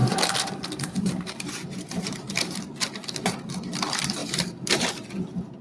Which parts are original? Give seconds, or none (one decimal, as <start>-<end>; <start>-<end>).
2.7-4.2; 4.9-5.6